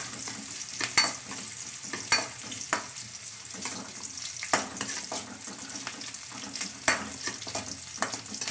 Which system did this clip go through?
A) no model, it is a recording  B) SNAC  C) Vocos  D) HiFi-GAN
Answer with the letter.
A